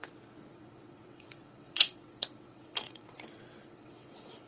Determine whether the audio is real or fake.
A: fake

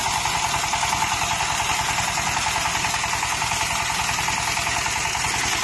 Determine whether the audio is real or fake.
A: real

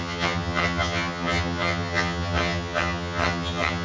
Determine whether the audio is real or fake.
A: fake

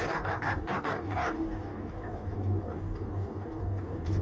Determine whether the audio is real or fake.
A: fake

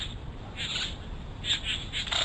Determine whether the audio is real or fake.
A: real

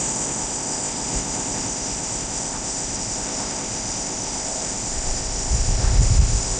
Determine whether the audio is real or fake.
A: fake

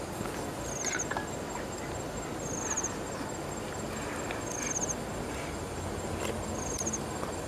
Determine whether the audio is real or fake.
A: real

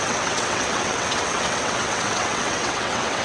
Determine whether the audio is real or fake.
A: fake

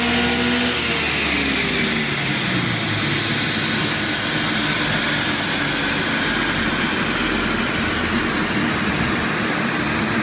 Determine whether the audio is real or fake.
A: real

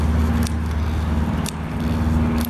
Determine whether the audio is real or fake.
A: real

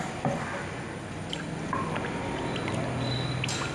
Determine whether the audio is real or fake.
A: real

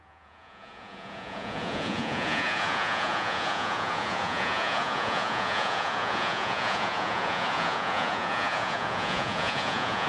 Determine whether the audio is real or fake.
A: fake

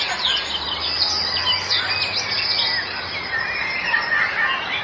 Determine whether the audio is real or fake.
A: real